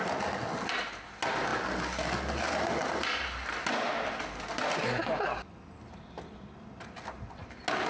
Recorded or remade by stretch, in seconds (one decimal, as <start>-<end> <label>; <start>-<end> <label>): 0.0-7.9 recorded